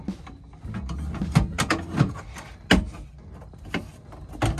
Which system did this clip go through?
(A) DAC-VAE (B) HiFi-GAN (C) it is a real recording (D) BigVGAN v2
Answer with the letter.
C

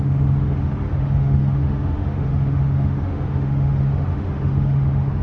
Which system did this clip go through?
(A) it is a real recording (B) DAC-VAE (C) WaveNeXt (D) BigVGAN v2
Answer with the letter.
B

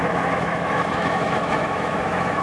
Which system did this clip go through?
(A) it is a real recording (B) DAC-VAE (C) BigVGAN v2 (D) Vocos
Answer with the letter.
B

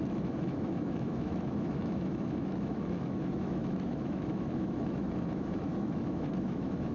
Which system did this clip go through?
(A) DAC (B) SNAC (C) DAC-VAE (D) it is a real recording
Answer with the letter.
C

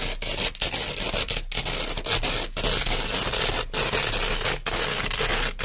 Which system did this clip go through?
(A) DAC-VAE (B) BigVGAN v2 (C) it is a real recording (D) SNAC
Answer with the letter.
C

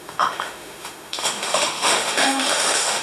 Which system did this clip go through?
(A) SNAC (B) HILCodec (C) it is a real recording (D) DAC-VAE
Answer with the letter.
D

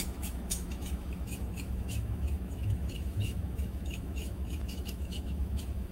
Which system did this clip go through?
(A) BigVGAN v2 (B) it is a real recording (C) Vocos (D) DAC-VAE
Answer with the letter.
D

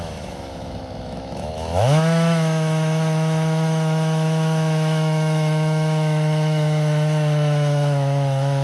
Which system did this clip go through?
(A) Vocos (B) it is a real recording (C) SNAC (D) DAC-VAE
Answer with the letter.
D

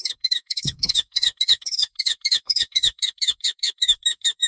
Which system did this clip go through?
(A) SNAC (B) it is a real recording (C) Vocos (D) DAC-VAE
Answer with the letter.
D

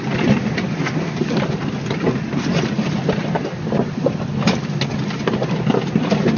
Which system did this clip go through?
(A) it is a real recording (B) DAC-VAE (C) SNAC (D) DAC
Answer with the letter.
A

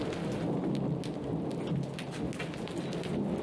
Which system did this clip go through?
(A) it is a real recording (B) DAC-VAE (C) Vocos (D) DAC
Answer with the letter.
A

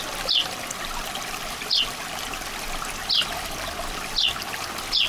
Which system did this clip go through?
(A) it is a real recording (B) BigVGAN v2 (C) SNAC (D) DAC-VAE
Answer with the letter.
A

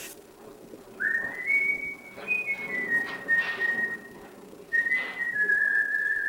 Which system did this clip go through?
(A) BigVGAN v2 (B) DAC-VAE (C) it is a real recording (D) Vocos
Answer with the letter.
C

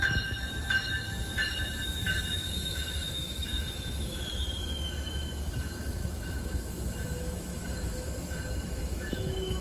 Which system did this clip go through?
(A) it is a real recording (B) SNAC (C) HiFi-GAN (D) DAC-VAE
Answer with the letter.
D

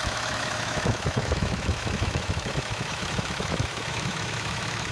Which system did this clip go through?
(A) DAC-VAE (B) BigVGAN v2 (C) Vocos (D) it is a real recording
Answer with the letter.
A